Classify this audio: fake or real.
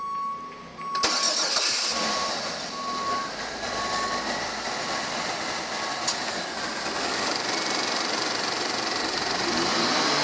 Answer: real